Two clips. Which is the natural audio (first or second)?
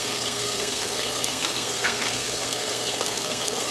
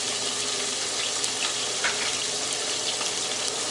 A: second